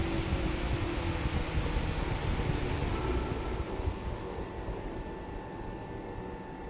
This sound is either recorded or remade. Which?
recorded